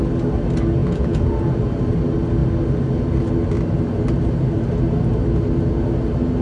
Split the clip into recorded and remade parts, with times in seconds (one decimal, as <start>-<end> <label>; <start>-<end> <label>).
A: 0.0-0.8 recorded; 0.8-1.6 remade; 1.6-6.4 recorded